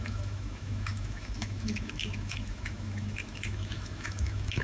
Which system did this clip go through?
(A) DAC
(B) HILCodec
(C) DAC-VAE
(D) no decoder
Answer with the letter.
C